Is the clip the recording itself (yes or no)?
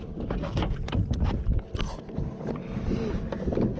yes